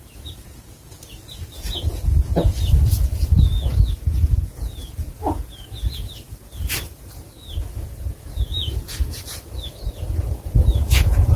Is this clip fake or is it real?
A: fake